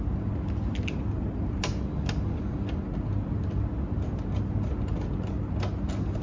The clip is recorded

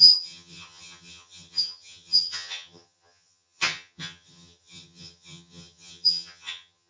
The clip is remade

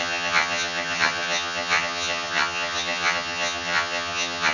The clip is remade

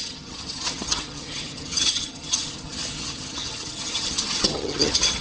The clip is remade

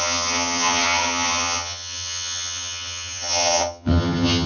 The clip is remade